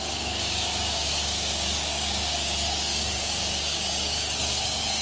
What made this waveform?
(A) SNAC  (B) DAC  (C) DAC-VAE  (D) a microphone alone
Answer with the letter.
B